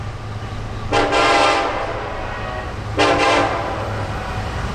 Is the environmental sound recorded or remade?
recorded